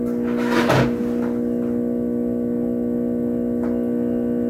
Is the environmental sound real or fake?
real